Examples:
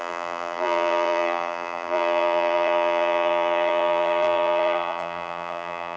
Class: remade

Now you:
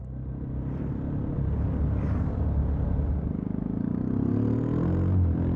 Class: recorded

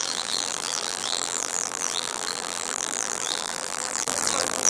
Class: remade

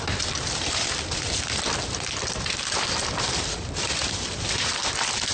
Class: remade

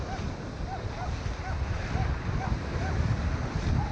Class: recorded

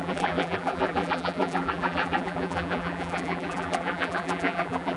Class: remade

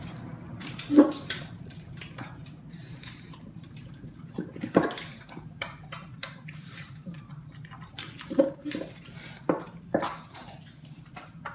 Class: remade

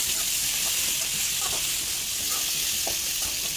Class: remade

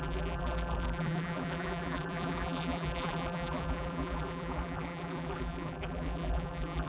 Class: remade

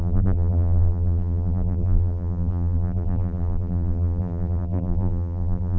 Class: remade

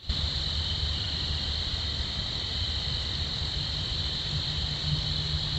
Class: recorded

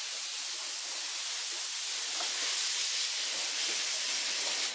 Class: recorded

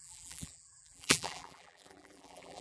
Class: remade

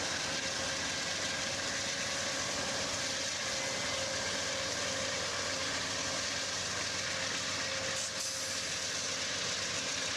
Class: recorded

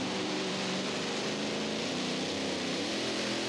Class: remade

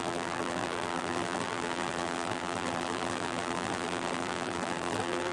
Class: remade